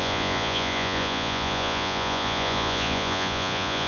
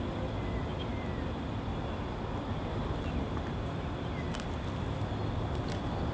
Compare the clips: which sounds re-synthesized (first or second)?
first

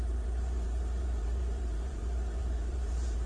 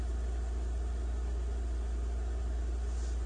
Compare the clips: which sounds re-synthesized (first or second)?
first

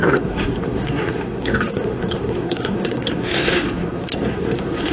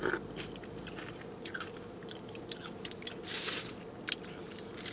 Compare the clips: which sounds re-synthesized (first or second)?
first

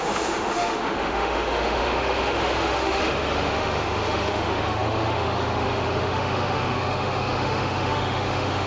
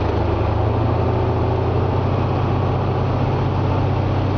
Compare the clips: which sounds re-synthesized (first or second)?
first